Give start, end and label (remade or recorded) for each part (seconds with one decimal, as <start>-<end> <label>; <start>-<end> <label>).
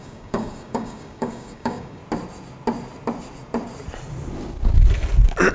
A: 0.0-2.0 remade; 2.0-5.5 recorded